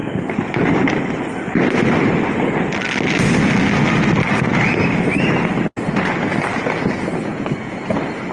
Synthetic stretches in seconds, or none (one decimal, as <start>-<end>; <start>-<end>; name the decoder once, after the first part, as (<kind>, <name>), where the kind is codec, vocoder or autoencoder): 7.3-7.8 (vocoder, Vocos)